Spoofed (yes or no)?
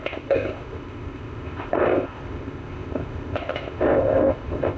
yes